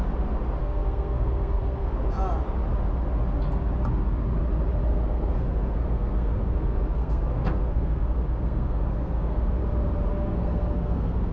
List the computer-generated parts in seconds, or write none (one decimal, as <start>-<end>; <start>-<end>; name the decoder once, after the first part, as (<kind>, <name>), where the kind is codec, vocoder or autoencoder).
0.6-1.9 (codec, SNAC); 4.9-9.5; 10.1-11.3

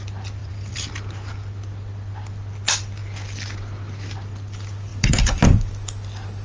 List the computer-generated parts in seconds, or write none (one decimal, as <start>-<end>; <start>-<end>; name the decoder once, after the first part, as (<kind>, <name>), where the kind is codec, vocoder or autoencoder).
0.4-0.9 (vocoder, BigVGAN v2); 4.9-5.7